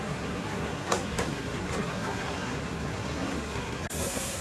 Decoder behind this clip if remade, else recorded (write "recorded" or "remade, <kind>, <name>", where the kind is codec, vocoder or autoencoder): remade, codec, SNAC